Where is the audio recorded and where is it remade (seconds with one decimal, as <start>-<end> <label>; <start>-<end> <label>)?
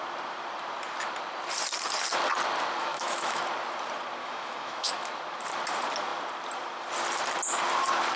0.0-2.8 recorded; 2.8-3.4 remade; 3.4-4.2 recorded; 4.2-5.1 remade; 5.1-8.2 recorded